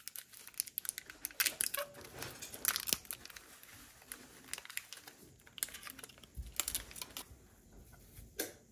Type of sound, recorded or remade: recorded